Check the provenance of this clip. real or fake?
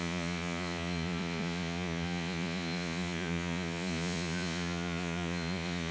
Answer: fake